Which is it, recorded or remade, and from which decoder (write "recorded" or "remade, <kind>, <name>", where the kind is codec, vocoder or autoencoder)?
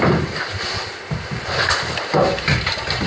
recorded